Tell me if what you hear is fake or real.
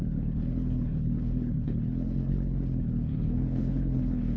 fake